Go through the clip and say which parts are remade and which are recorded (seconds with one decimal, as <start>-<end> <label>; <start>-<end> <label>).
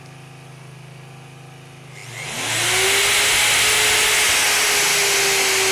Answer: 0.0-5.7 recorded